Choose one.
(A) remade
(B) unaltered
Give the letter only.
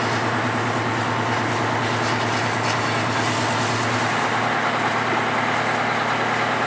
B